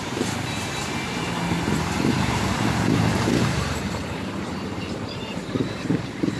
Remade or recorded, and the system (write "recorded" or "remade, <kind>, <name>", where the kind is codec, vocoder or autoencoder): remade, vocoder, BigVGAN v2